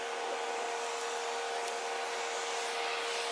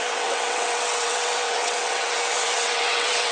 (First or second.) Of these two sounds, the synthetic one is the second